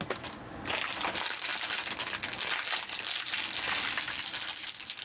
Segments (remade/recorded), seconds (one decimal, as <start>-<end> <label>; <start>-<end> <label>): 0.0-5.0 recorded